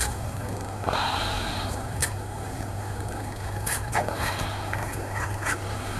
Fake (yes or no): yes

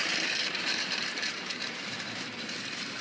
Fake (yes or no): yes